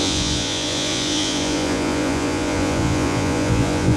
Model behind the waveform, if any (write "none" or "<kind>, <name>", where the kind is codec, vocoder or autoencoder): vocoder, Vocos